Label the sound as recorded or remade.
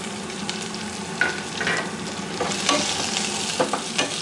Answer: recorded